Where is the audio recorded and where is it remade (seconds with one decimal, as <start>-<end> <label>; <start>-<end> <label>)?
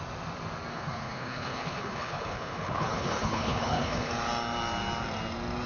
0.0-0.7 recorded; 0.7-4.1 remade; 4.1-5.7 recorded